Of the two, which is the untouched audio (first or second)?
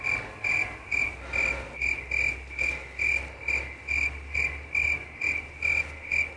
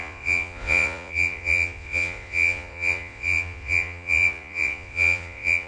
first